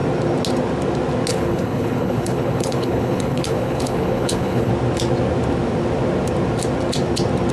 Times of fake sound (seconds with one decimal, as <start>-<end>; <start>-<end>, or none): 1.3-4.7